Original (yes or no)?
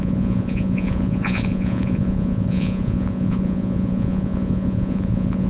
no